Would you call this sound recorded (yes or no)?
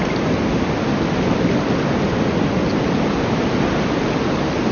yes